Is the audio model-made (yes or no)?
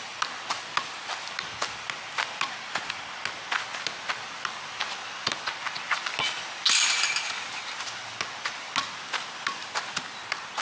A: no